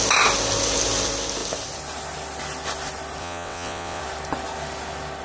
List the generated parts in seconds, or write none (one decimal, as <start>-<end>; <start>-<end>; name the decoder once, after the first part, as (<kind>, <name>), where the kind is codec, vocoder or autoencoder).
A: 3.2-4.0 (vocoder, WaveNeXt)